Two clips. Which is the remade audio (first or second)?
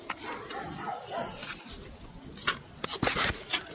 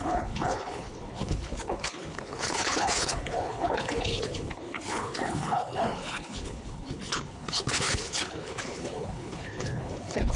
second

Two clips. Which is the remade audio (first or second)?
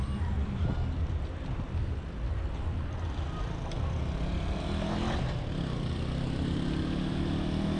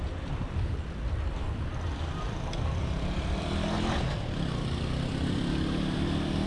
second